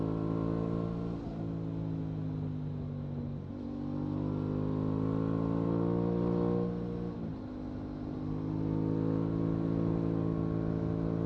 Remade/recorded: recorded